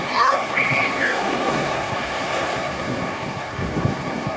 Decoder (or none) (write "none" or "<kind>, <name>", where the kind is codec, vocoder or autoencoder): codec, SNAC